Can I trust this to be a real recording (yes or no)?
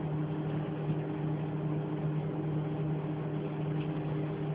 yes